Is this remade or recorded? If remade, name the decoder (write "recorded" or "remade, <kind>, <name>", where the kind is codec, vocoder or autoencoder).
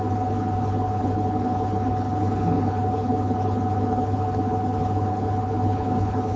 remade, codec, HILCodec